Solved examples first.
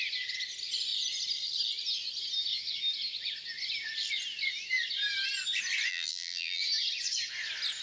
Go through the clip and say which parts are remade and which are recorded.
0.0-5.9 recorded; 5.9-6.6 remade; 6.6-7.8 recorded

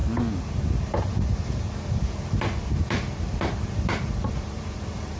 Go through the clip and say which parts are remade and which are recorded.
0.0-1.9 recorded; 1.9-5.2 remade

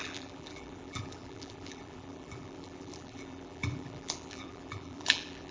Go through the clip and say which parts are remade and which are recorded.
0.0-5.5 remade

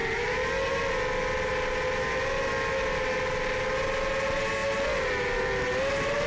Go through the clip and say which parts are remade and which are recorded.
0.0-6.3 recorded

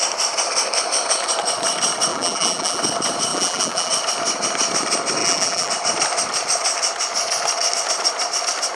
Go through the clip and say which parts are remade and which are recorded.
0.0-2.1 recorded; 2.1-2.8 remade; 2.8-3.3 recorded; 3.3-3.9 remade; 3.9-5.2 recorded; 5.2-5.7 remade; 5.7-8.7 recorded

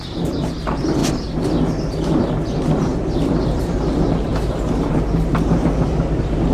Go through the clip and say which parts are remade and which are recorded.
0.0-1.0 remade; 1.0-2.5 recorded; 2.5-6.5 remade

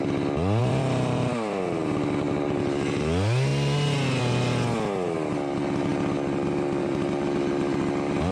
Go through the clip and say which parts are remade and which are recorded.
0.0-0.6 recorded; 0.6-1.6 remade; 1.6-8.3 recorded